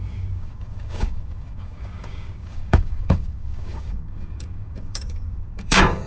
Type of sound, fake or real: fake